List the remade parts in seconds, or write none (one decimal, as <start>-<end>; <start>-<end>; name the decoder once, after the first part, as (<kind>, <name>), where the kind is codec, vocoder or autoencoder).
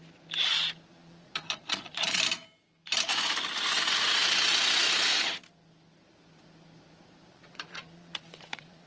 0.9-2.2 (vocoder, Vocos); 7.3-8.9